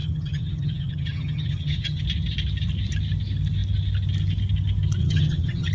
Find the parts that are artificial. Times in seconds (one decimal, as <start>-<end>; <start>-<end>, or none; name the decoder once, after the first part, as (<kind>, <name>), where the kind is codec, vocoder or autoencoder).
0.0-2.0 (vocoder, HiFi-GAN); 5.0-5.7